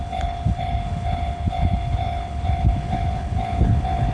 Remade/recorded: remade